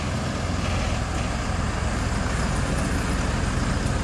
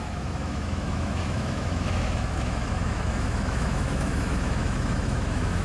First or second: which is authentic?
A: first